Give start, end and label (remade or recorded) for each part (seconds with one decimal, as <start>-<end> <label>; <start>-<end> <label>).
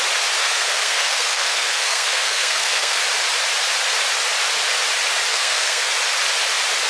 0.0-0.4 recorded; 0.4-3.0 remade; 3.0-5.3 recorded; 5.3-5.9 remade; 5.9-6.9 recorded